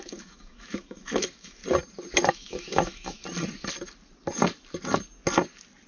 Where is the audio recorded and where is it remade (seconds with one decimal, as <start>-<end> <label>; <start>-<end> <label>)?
0.0-1.6 remade; 1.6-2.3 recorded; 2.3-3.2 remade; 3.2-5.9 recorded